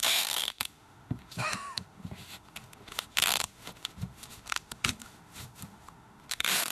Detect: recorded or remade remade